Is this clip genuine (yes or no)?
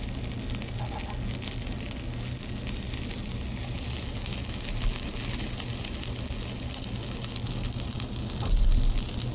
yes